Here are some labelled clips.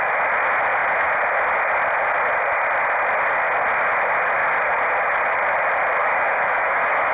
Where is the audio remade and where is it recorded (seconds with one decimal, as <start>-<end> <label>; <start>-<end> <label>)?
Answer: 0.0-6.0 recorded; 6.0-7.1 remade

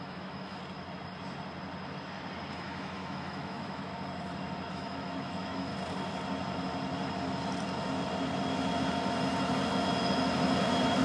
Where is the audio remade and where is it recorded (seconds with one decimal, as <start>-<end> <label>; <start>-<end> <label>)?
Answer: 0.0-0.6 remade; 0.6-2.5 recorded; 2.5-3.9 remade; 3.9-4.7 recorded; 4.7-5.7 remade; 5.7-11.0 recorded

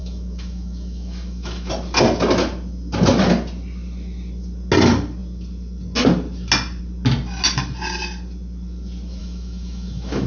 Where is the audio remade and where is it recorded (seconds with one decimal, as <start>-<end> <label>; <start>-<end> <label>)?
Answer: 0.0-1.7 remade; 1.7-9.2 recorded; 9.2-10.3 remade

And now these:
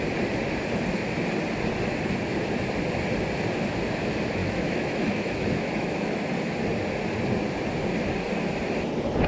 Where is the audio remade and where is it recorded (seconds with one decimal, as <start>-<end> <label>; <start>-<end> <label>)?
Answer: 0.0-4.4 recorded; 4.4-6.3 remade; 6.3-9.3 recorded

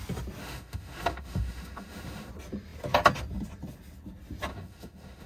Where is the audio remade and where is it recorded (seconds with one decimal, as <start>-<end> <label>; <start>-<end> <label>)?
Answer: 0.0-0.4 recorded; 0.4-2.3 remade; 2.3-4.5 recorded; 4.5-5.3 remade

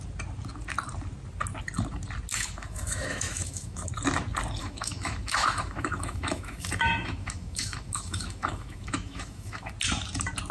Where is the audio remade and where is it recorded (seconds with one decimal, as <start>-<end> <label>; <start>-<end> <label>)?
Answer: 0.0-2.3 recorded; 2.3-3.9 remade; 3.9-4.6 recorded; 4.6-9.7 remade; 9.7-10.5 recorded